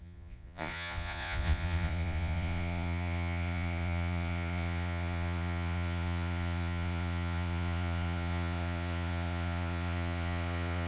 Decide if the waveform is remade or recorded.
remade